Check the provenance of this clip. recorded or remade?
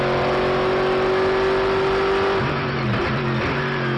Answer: recorded